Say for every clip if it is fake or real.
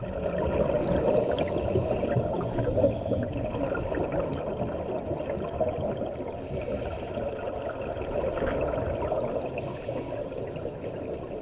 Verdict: real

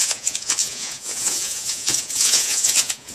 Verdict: fake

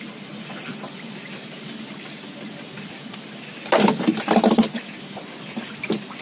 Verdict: real